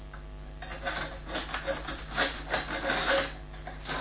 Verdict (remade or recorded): recorded